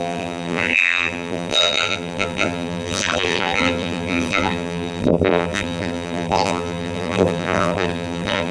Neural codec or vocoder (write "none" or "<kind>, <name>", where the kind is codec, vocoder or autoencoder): vocoder, BigVGAN v2